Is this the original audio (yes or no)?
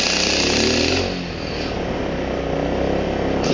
yes